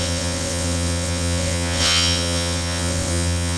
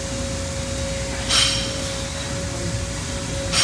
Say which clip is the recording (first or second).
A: second